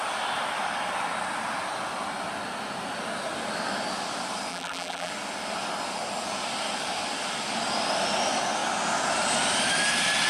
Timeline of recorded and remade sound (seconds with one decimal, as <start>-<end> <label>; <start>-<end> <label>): 0.0-4.5 recorded; 4.5-5.1 remade; 5.1-10.3 recorded